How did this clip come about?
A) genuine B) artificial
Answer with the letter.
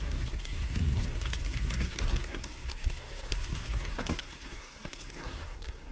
B